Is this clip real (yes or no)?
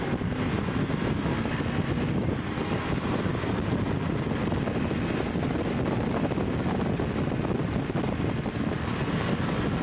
yes